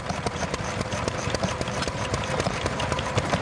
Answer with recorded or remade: remade